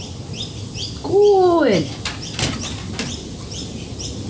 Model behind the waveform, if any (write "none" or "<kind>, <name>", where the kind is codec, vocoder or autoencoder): none